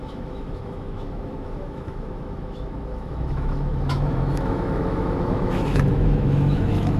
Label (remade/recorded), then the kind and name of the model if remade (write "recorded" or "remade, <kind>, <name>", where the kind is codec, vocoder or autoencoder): remade, autoencoder, DAC-VAE